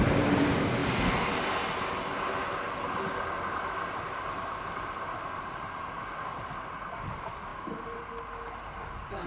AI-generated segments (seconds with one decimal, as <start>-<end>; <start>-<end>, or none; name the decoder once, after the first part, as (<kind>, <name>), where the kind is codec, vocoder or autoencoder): none